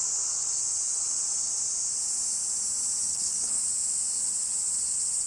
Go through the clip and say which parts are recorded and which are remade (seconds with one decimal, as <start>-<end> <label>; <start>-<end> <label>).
0.0-3.1 recorded; 3.1-3.6 remade; 3.6-5.3 recorded